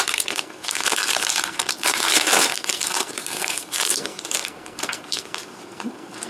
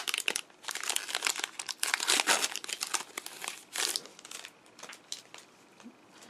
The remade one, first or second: first